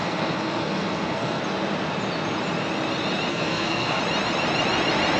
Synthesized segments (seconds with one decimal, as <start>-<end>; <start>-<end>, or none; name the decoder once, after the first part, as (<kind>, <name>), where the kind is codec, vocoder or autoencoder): 0.0-1.4 (codec, SNAC); 3.3-4.0